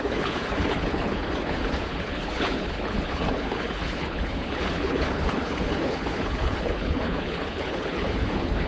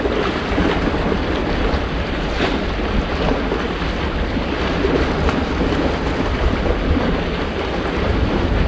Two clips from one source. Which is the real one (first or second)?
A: second